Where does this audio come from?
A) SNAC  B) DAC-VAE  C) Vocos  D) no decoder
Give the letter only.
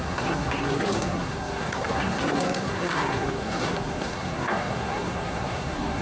A